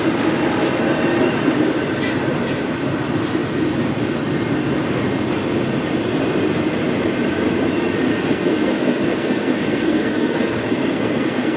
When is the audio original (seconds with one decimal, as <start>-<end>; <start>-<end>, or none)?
0.0-8.1